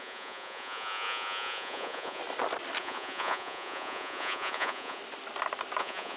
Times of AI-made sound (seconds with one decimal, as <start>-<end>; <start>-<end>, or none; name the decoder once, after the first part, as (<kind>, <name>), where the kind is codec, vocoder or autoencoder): 0.0-2.2 (vocoder, Vocos); 2.8-5.0; 5.8-6.2